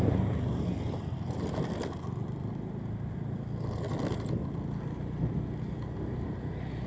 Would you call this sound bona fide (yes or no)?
yes